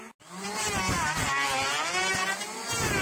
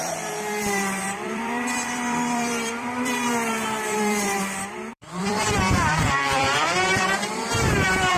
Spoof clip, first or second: second